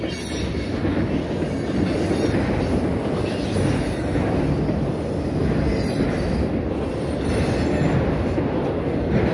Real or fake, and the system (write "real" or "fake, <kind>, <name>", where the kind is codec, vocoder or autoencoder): real